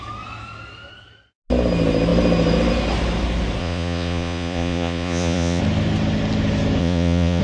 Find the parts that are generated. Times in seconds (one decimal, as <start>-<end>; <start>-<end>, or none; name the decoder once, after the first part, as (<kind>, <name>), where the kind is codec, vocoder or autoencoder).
3.6-5.6 (vocoder, Vocos); 6.8-7.4